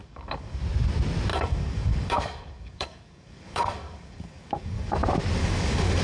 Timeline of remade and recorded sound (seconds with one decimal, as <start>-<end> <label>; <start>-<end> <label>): 0.0-0.6 remade; 0.6-1.3 recorded; 1.3-4.9 remade; 4.9-5.4 recorded; 5.4-6.0 remade